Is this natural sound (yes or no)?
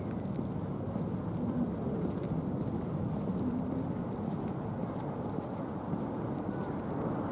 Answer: yes